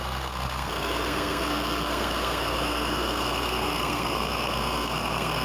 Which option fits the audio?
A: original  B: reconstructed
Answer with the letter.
B